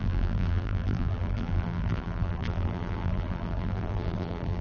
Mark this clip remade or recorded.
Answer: remade